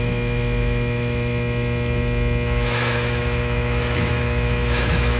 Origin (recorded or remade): remade